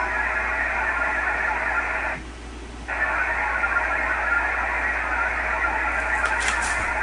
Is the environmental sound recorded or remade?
recorded